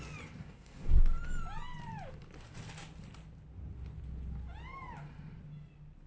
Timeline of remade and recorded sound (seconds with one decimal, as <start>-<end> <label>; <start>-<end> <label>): 0.0-0.4 recorded; 0.4-1.0 remade; 1.0-6.1 recorded